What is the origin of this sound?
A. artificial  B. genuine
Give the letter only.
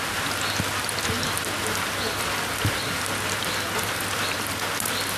B